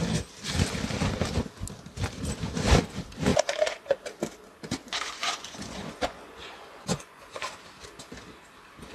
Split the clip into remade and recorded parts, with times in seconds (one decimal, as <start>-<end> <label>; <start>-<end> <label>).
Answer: 0.0-3.3 recorded; 3.3-4.0 remade; 4.0-4.8 recorded; 4.8-7.4 remade; 7.4-8.9 recorded